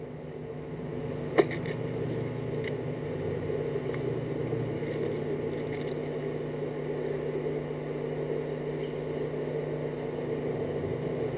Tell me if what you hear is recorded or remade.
recorded